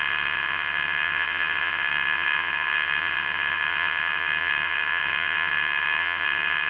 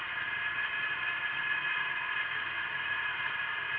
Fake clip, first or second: first